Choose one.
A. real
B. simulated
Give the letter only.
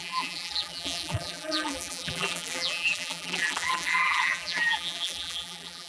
B